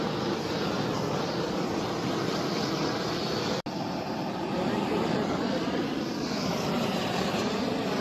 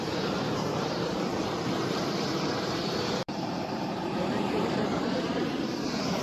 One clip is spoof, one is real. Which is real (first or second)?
first